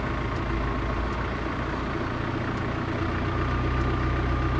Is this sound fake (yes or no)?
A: no